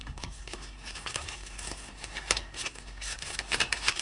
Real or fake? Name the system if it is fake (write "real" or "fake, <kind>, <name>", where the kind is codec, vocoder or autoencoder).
fake, codec, SNAC